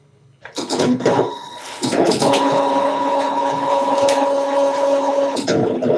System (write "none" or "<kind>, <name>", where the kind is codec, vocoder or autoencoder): codec, HILCodec